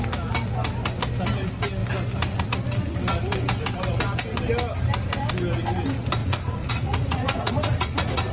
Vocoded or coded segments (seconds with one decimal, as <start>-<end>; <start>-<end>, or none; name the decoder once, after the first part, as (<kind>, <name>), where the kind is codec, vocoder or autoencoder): 6.2-8.3 (vocoder, Vocos)